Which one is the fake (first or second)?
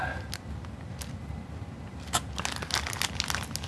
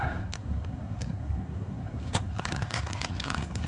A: second